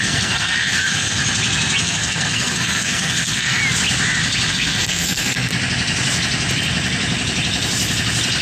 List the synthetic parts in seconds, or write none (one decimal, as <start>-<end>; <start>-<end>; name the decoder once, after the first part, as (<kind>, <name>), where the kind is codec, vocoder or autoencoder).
0.0-1.2 (codec, SNAC); 1.8-3.6; 4.5-5.5